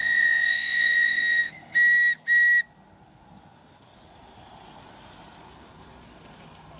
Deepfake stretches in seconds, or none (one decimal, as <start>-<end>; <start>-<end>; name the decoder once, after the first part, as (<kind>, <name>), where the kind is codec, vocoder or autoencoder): 0.0-1.5 (vocoder, WaveNeXt)